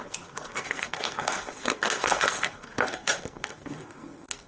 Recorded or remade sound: remade